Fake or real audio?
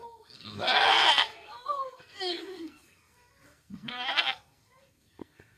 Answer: fake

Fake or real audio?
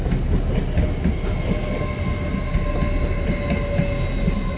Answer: real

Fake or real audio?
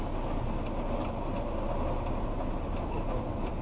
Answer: real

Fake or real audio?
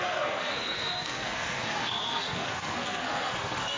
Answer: fake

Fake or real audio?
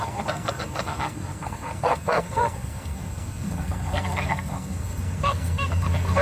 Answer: fake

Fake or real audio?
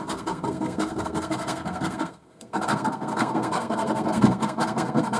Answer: fake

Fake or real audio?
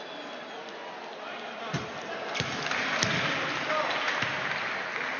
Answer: real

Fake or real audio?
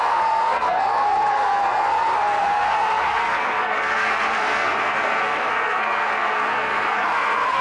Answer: fake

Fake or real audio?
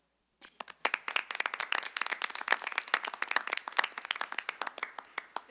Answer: real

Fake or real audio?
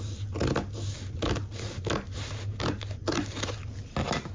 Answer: real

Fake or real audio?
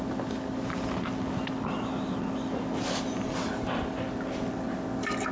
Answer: real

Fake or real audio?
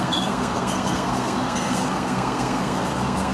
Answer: fake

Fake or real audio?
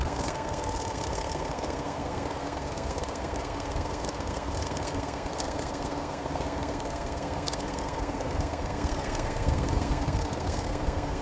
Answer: fake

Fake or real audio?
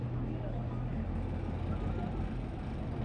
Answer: real